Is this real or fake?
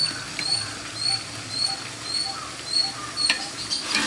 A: real